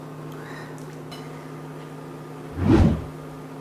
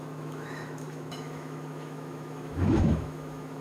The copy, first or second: second